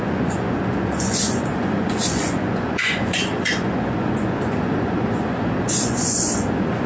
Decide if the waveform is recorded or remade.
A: remade